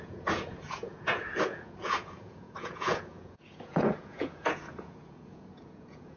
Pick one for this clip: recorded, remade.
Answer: remade